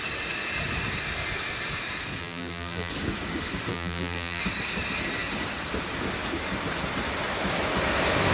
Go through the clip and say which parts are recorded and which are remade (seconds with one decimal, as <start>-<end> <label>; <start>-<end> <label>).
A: 0.0-2.2 recorded; 2.2-2.9 remade; 2.9-3.7 recorded; 3.7-4.4 remade; 4.4-8.3 recorded